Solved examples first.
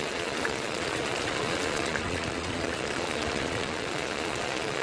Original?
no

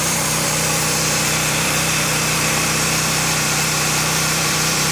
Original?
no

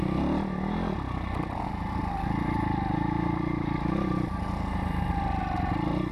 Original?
yes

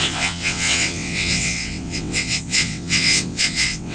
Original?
no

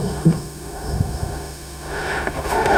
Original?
no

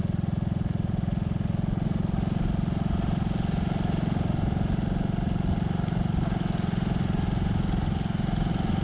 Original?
yes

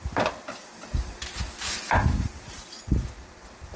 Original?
yes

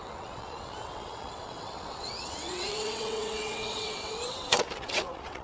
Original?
no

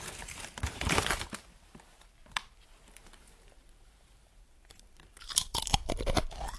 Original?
no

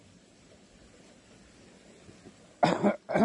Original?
yes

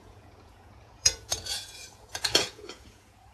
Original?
no